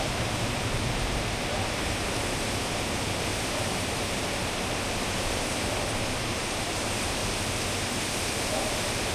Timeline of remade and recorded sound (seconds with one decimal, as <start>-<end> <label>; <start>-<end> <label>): 0.0-4.4 remade; 4.4-5.5 recorded; 5.5-7.2 remade; 7.2-9.1 recorded